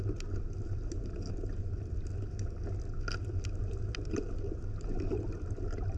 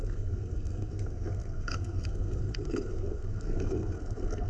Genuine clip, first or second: first